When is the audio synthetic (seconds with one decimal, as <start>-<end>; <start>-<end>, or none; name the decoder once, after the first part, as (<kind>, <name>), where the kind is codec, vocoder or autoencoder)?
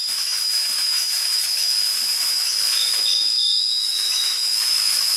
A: 0.0-5.2 (autoencoder, DAC-VAE)